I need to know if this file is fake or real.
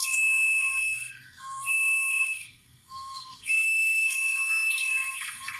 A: fake